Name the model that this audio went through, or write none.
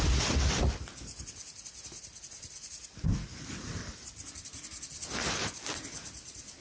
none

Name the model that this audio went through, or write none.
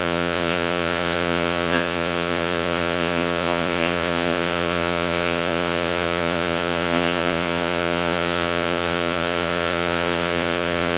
vocoder, Vocos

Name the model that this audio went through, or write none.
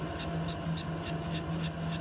none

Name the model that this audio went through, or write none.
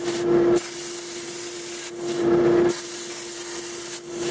none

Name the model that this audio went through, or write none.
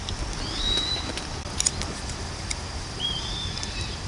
none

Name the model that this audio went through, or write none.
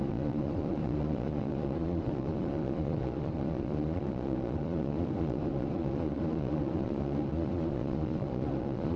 vocoder, Vocos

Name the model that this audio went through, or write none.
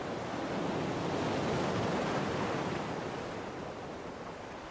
none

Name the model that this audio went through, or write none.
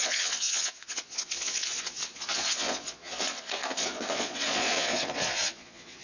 vocoder, Vocos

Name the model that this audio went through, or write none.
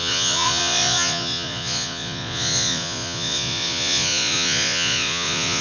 vocoder, Vocos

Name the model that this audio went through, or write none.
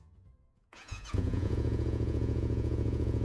vocoder, Vocos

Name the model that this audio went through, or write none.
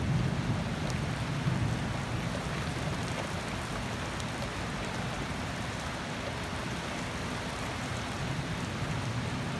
none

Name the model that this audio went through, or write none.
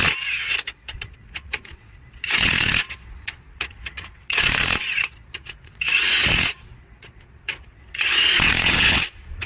vocoder, Vocos